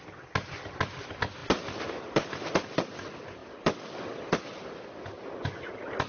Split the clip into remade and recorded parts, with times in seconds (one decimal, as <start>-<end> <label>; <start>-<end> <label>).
0.0-6.1 recorded